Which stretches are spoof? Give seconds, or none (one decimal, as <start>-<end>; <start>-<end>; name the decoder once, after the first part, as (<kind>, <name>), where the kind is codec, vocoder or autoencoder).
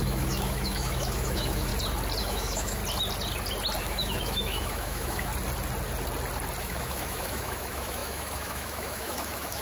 0.0-1.7 (autoencoder, DAC-VAE); 2.2-2.8; 3.8-5.3; 6.6-9.6